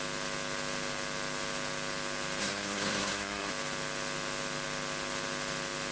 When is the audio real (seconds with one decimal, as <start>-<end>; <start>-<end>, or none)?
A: 0.0-2.4; 3.5-5.9